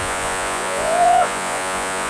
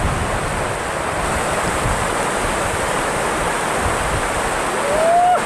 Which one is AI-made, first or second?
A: first